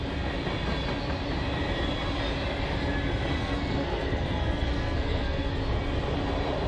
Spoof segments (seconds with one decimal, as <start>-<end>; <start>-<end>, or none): 3.4-5.6